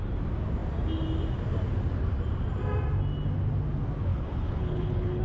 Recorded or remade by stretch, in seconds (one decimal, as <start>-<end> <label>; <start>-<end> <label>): 0.0-4.1 recorded; 4.1-5.2 remade